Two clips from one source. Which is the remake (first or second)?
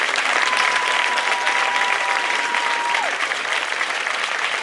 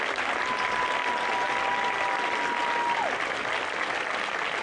first